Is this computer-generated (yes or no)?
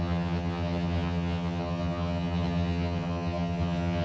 yes